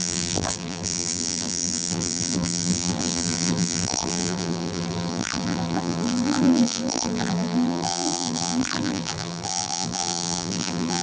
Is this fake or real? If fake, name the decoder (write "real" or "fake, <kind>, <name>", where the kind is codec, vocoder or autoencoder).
fake, vocoder, BigVGAN v2